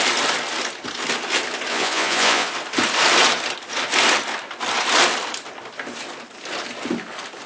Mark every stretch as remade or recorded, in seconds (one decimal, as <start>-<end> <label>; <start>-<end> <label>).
0.0-1.7 recorded; 1.7-2.5 remade; 2.5-7.5 recorded